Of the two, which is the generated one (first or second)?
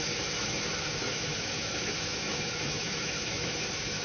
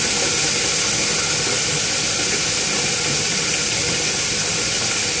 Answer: first